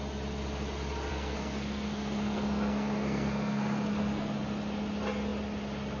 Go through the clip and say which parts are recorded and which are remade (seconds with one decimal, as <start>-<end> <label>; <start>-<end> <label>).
0.0-1.1 recorded; 1.1-4.3 remade; 4.3-6.0 recorded